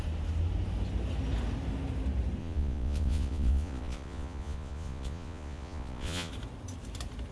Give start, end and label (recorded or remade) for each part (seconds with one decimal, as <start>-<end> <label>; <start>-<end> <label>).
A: 0.0-2.4 recorded; 2.4-6.3 remade; 6.3-7.3 recorded